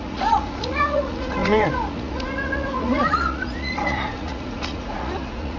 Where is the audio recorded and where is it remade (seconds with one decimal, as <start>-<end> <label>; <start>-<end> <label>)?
0.0-5.6 remade